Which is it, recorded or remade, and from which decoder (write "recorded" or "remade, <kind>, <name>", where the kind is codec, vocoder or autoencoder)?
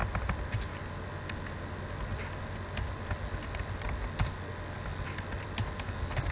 recorded